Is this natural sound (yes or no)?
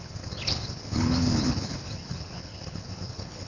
no